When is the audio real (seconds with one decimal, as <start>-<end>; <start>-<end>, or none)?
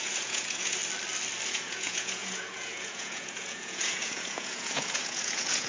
0.8-1.5